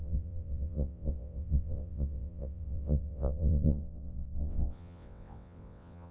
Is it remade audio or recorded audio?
remade